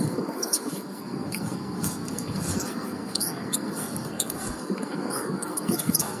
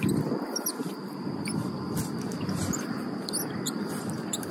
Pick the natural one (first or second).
second